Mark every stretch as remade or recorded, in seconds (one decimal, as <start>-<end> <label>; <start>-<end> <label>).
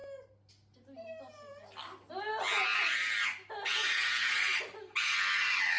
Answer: 0.0-5.8 recorded